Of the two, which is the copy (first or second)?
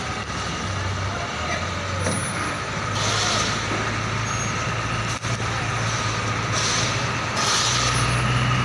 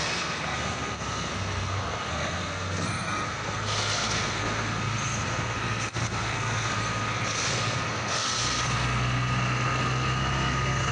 second